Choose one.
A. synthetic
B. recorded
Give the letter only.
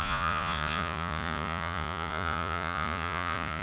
A